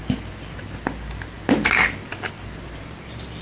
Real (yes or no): yes